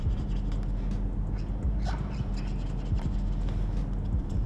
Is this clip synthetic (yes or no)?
no